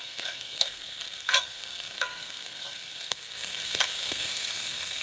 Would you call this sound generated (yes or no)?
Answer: yes